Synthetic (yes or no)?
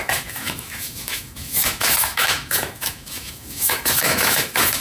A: yes